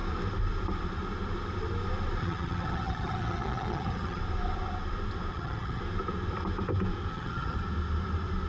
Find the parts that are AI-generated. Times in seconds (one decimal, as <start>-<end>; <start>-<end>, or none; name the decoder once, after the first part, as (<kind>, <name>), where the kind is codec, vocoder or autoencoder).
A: 2.2-4.2 (vocoder, HiFi-GAN); 5.3-5.8; 7.1-7.6